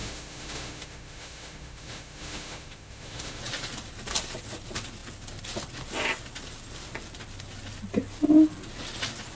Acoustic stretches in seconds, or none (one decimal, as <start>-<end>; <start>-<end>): 3.4-9.3